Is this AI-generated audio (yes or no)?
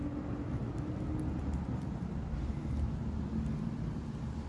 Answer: no